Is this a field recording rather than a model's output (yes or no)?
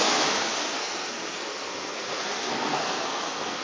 no